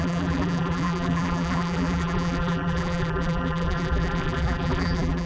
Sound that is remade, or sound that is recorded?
remade